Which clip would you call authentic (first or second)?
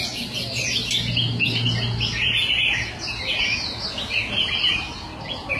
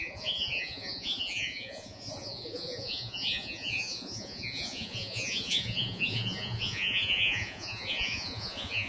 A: first